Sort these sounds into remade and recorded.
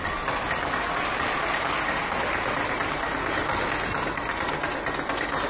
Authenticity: recorded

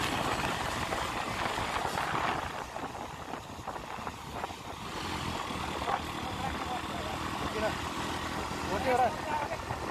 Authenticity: recorded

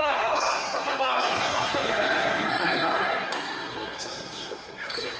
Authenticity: remade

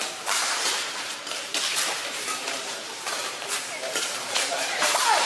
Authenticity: remade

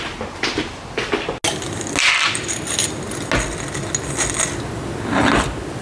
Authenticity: recorded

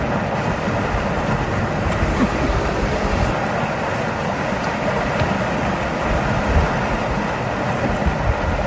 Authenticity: recorded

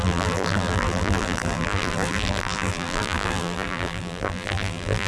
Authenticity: remade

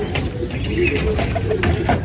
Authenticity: recorded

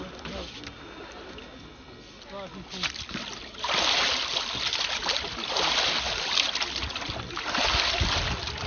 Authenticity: recorded